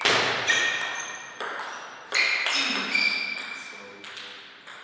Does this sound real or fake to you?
real